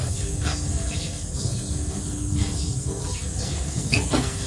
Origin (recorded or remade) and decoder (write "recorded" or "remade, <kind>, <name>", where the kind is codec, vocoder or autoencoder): remade, codec, SNAC